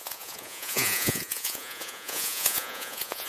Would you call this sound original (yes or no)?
no